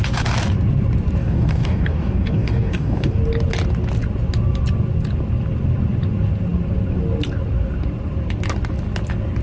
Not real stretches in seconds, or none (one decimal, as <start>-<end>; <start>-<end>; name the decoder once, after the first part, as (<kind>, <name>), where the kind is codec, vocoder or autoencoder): 1.2-3.2 (codec, DAC)